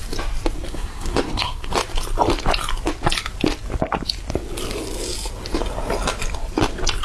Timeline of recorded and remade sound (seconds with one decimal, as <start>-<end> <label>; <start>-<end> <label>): 0.0-0.7 recorded; 0.7-1.7 remade; 1.7-7.0 recorded